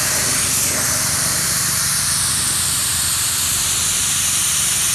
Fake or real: real